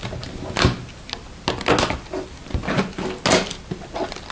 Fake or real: real